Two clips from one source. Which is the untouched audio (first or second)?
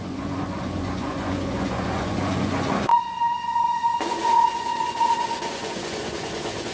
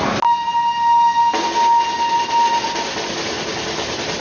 second